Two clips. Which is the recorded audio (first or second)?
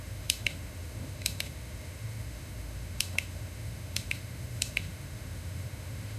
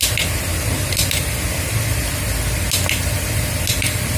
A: second